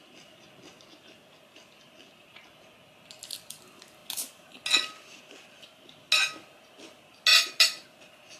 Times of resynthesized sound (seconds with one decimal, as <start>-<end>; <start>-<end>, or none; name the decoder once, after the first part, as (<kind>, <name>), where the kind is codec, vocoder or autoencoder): none